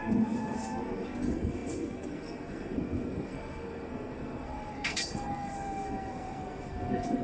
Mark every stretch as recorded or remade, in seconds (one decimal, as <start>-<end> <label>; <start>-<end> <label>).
0.0-7.2 remade